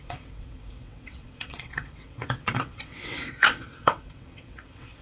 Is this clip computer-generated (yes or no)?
yes